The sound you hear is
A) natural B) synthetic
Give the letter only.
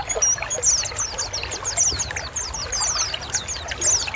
A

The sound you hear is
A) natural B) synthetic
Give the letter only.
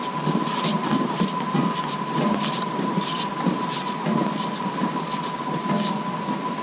A